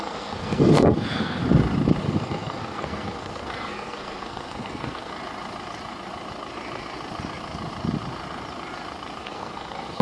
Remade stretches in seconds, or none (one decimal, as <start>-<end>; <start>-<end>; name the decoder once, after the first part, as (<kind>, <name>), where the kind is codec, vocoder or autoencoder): 0.0-1.4 (codec, SNAC); 2.0-5.1; 9.2-10.0